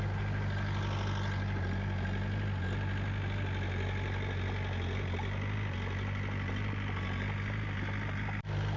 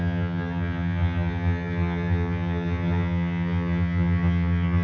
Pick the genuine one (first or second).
first